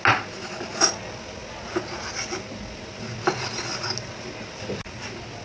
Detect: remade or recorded recorded